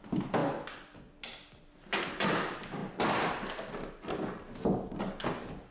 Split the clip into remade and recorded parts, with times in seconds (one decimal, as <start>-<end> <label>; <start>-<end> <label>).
0.0-5.7 recorded